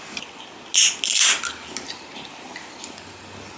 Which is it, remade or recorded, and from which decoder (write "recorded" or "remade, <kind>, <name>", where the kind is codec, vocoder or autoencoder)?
recorded